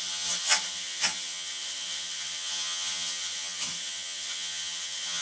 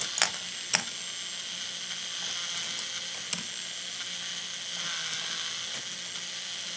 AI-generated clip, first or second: first